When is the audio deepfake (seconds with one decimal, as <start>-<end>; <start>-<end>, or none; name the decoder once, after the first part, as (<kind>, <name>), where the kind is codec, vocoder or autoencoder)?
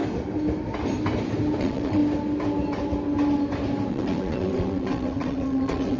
1.6-2.0 (vocoder, WaveNeXt); 3.9-6.0